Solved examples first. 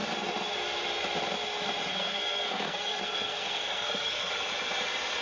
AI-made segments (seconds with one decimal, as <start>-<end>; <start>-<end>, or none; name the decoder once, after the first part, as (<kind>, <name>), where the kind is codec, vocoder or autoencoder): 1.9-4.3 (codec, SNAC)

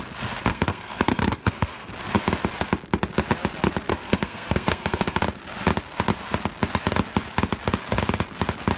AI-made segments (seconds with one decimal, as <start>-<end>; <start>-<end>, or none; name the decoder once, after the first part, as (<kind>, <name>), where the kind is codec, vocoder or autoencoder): 0.5-1.9 (codec, SNAC); 3.9-5.2

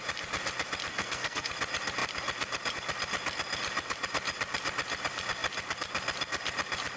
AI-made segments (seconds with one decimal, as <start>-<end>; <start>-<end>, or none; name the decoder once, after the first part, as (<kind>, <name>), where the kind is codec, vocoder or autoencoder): 0.9-1.5 (codec, SNAC)